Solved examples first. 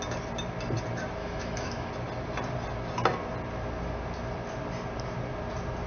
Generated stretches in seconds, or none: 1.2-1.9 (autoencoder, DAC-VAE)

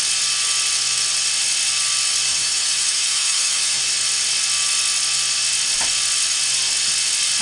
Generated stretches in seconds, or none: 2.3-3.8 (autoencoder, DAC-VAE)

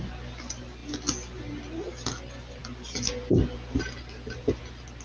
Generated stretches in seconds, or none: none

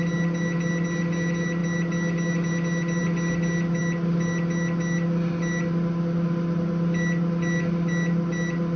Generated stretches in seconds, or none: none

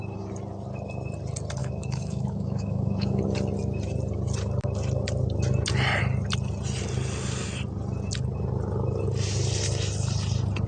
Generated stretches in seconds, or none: 1.6-3.2 (autoencoder, DAC-VAE)